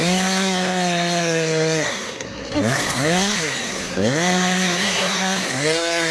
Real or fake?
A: fake